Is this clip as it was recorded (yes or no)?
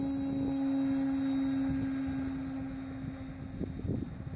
yes